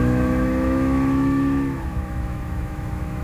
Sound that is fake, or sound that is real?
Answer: fake